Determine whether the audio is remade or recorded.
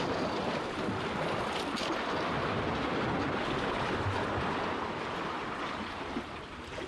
recorded